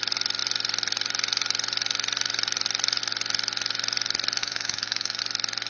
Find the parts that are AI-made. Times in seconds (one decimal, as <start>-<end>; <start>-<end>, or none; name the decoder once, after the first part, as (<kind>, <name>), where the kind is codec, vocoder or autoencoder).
4.4-5.2 (autoencoder, DAC-VAE)